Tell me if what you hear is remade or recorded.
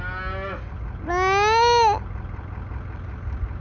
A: recorded